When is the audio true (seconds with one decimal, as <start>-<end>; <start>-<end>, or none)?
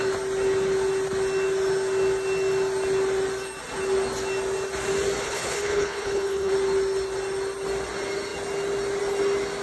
0.0-5.2; 6.5-9.6